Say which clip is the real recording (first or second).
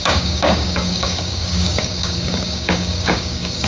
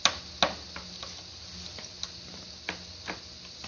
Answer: second